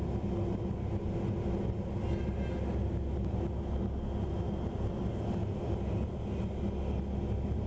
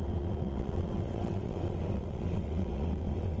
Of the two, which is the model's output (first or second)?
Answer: second